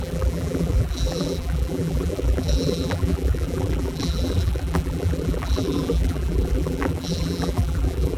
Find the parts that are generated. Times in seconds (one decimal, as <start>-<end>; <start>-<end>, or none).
0.0-8.2